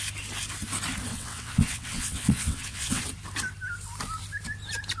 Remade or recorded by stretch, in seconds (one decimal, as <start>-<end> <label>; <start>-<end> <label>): 0.0-1.1 recorded; 1.1-3.0 remade; 3.0-5.0 recorded